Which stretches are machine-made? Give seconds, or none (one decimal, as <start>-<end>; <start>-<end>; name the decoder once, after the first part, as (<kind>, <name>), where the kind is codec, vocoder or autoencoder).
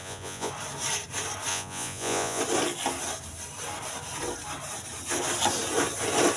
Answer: 0.0-0.5 (vocoder, Vocos); 1.5-2.4